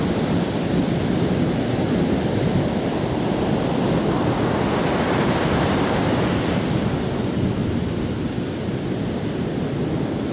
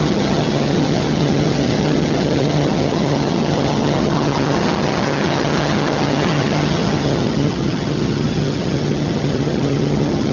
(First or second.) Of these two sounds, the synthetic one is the second